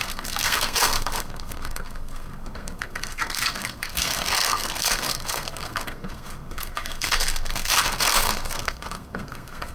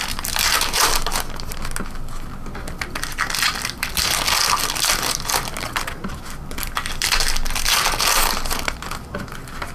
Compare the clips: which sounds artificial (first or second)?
first